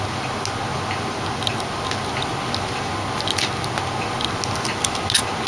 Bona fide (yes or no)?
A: yes